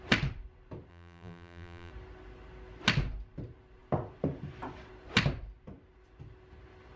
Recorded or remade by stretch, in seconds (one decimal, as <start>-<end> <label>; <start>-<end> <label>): 0.0-0.9 recorded; 0.9-1.9 remade; 1.9-7.0 recorded